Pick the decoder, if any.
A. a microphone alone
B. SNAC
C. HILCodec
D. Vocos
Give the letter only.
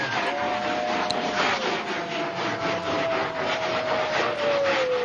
A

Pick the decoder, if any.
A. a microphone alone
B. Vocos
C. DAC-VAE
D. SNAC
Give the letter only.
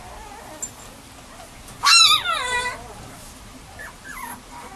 A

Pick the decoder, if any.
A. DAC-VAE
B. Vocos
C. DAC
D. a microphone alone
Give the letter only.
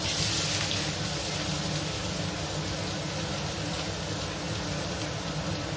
D